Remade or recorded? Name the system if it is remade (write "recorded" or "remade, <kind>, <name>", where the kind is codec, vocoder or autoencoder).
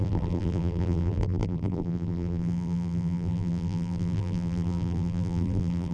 remade, vocoder, BigVGAN v2